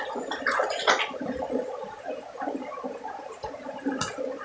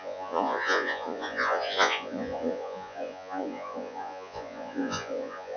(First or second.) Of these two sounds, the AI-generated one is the second